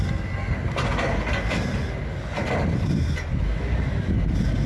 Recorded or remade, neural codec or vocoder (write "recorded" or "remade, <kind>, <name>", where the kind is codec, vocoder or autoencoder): recorded